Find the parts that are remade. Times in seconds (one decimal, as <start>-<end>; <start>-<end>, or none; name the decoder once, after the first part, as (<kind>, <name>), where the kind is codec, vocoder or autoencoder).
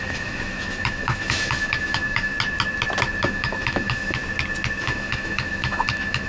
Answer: 0.0-2.3 (autoencoder, DAC-VAE); 3.2-4.2; 4.8-6.3